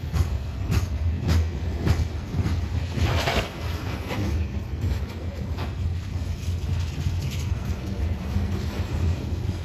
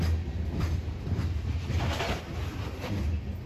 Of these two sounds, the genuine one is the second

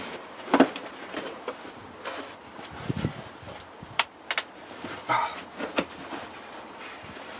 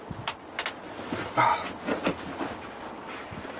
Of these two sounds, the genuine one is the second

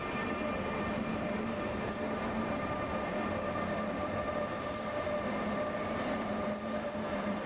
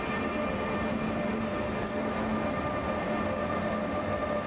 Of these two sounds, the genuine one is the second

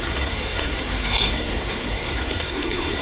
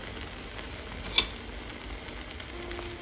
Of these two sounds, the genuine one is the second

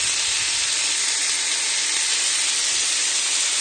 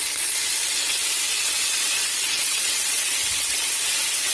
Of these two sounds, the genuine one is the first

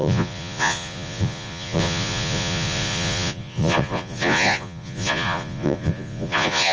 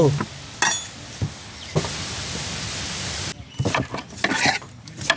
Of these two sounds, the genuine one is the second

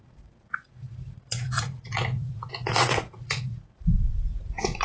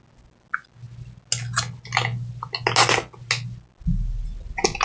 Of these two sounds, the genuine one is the second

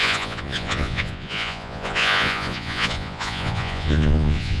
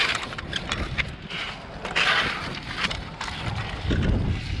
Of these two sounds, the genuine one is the second